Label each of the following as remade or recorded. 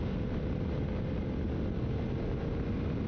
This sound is recorded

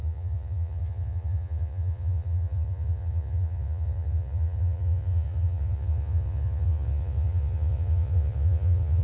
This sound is remade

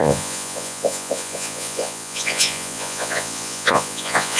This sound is remade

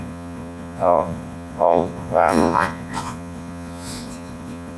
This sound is remade